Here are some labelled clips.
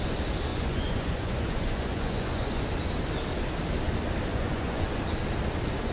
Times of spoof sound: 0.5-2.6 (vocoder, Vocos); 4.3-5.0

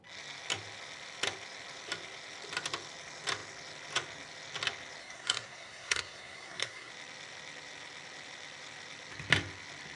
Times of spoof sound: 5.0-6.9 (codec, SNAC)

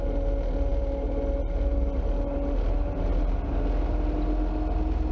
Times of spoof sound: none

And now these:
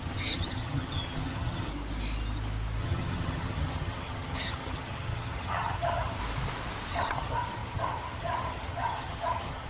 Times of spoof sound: 0.0-1.7 (vocoder, HiFi-GAN); 2.8-6.2; 6.9-9.7